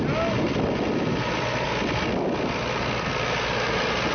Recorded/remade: recorded